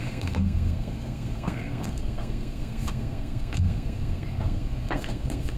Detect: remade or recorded remade